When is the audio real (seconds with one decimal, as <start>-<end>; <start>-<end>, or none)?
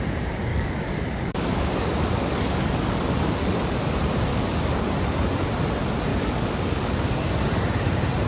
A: 0.0-0.5; 3.8-4.3; 4.8-6.1; 7.2-8.3